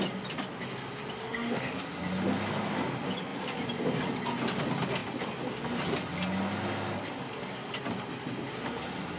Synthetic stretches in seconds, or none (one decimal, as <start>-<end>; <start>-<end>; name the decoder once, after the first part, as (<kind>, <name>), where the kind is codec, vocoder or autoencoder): 1.2-1.8 (autoencoder, DAC-VAE)